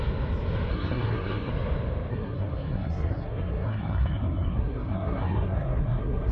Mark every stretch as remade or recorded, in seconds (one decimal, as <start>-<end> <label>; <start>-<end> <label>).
0.0-0.7 recorded; 0.7-1.5 remade; 1.5-2.1 recorded; 2.1-6.3 remade